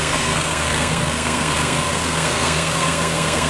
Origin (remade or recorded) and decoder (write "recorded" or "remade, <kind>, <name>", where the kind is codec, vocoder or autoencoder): remade, codec, SNAC